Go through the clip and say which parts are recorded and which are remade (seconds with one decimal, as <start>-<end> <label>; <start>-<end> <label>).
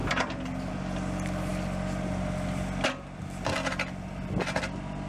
0.0-0.7 remade; 0.7-5.1 recorded